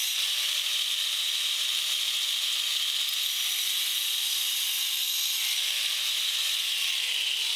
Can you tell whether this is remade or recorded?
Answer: recorded